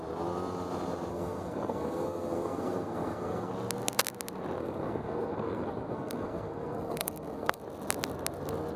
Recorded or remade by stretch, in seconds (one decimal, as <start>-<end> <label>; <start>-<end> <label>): 0.0-1.1 recorded; 1.1-3.5 remade; 3.5-4.6 recorded; 4.6-7.6 remade; 7.6-8.8 recorded